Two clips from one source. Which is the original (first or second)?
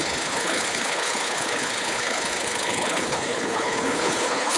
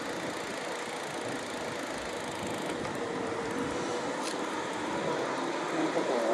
second